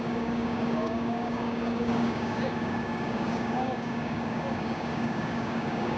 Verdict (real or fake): fake